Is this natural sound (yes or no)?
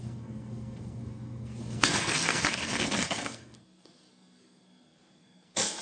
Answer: no